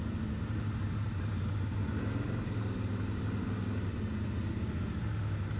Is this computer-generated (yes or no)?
no